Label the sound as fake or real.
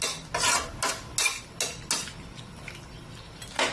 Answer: real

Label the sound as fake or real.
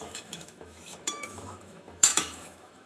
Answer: fake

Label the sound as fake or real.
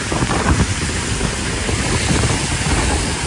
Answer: real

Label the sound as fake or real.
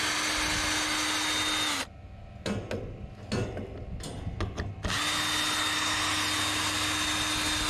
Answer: real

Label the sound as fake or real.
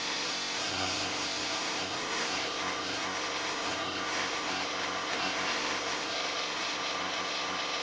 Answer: fake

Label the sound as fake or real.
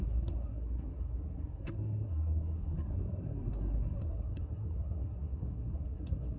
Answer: fake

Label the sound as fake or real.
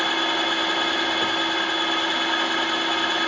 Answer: real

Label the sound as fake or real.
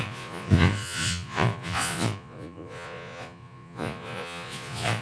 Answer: fake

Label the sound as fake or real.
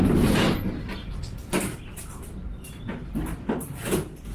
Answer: fake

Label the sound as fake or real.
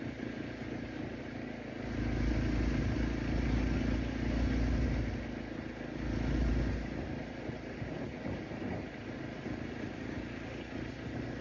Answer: real